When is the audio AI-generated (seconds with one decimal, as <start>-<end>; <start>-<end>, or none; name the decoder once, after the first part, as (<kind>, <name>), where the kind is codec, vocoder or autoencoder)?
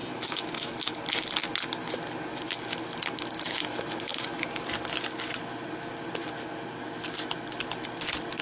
0.0-0.7 (autoencoder, DAC-VAE)